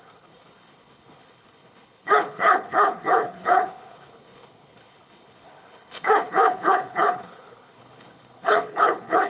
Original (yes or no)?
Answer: no